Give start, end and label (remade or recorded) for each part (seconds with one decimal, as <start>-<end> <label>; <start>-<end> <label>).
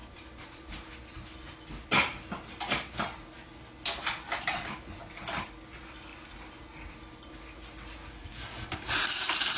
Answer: 0.0-0.9 remade; 0.9-9.6 recorded